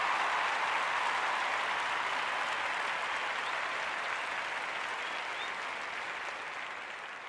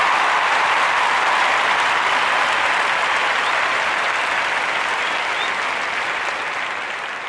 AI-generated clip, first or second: second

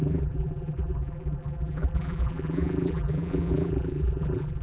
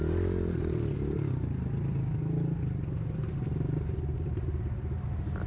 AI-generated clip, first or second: first